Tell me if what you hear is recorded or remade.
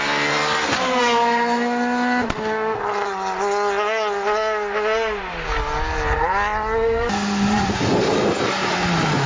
recorded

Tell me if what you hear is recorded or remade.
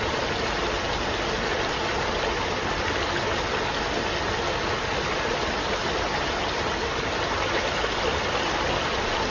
recorded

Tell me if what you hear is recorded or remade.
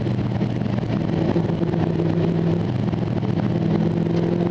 recorded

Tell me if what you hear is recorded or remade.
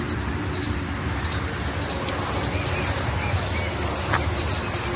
recorded